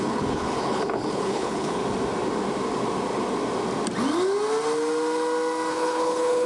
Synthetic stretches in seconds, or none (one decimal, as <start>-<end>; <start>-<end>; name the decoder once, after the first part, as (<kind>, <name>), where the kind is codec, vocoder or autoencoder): 0.0-1.8 (codec, HILCodec); 5.7-6.5

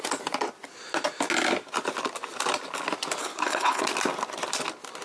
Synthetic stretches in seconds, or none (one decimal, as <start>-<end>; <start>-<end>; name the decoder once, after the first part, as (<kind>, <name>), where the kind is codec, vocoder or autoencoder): 3.2-3.8 (codec, HILCodec)

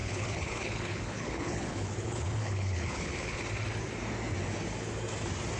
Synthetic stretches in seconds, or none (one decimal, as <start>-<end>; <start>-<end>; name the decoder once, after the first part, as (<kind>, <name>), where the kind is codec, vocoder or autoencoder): 0.0-3.4 (codec, HILCodec)

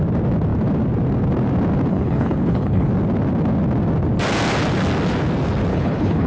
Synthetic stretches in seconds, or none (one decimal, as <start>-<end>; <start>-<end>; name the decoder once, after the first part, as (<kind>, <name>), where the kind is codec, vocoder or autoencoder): 1.9-2.9 (codec, HILCodec); 5.7-6.3

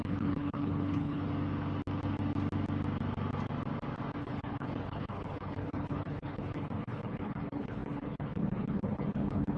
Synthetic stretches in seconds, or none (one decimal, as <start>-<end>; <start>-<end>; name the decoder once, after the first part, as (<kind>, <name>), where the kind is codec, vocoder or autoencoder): 0.0-1.3 (codec, HILCodec); 4.2-9.6